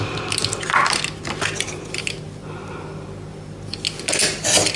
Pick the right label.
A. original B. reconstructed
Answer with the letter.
A